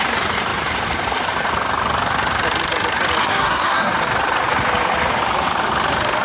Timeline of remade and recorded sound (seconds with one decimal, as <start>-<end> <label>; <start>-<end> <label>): 0.0-3.2 recorded; 3.2-3.9 remade; 3.9-6.2 recorded

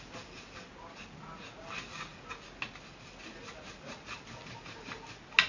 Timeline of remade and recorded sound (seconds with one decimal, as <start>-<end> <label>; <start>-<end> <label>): 0.0-5.5 recorded

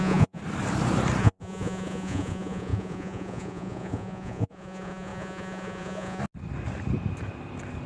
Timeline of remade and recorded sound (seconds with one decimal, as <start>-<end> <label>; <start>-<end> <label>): 0.0-0.4 remade; 0.4-1.2 recorded; 1.2-6.2 remade; 6.2-7.9 recorded